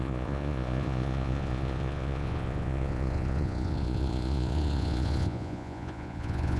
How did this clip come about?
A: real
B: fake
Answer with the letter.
B